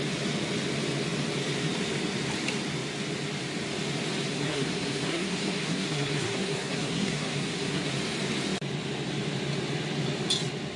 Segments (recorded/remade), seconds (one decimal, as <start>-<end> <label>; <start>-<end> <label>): 0.0-4.3 recorded; 4.3-7.9 remade; 7.9-10.8 recorded